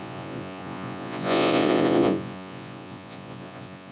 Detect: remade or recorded remade